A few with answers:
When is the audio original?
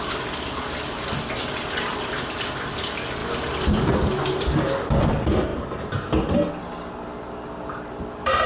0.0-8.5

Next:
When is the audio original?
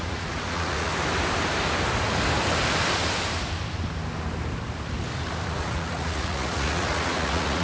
0.9-5.5